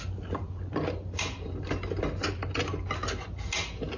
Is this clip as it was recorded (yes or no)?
yes